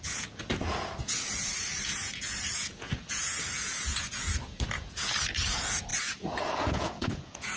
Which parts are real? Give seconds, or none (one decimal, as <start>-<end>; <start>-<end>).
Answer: none